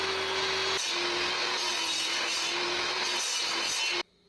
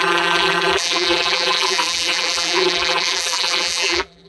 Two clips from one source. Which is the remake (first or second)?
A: second